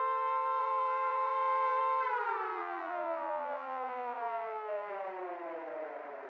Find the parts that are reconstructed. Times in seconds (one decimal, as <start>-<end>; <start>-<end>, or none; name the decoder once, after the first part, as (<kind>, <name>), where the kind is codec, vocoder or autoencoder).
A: 0.6-1.8 (vocoder, BigVGAN v2); 2.5-4.9